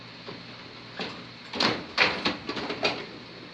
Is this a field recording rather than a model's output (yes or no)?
yes